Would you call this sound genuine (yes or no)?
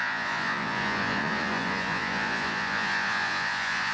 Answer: no